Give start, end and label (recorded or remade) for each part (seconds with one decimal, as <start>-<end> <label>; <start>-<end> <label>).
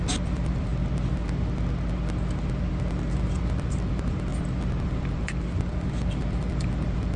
0.0-0.7 remade; 0.7-3.2 recorded; 3.2-4.3 remade; 4.3-4.8 recorded; 4.8-7.2 remade